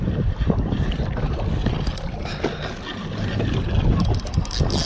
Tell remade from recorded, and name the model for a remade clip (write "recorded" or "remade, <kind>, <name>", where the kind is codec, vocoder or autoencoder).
recorded